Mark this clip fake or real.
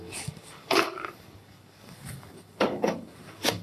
fake